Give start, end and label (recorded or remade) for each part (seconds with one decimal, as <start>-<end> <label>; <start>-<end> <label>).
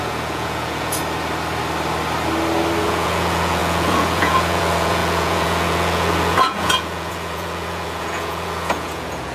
0.0-1.0 remade; 1.0-2.8 recorded; 2.8-9.3 remade